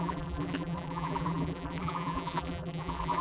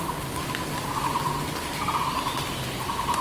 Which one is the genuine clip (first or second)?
second